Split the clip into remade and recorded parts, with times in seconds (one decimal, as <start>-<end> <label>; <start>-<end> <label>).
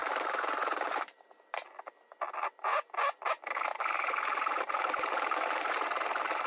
0.0-1.2 remade; 1.2-3.7 recorded; 3.7-5.7 remade; 5.7-6.5 recorded